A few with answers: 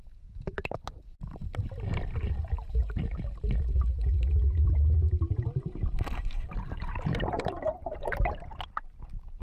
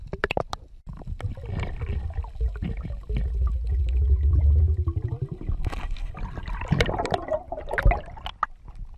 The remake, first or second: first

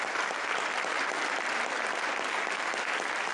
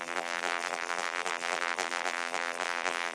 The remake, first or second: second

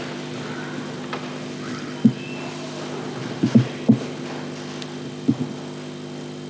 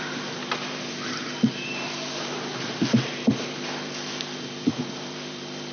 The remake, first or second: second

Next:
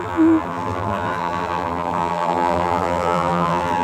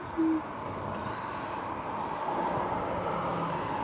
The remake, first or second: first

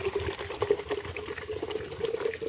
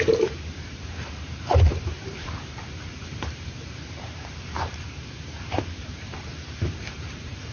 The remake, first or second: second